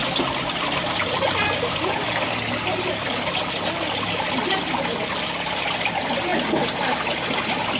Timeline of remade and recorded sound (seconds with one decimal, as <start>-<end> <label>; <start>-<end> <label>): 0.0-7.8 recorded